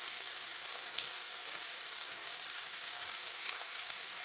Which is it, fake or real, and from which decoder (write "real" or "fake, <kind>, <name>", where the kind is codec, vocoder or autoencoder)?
fake, codec, DAC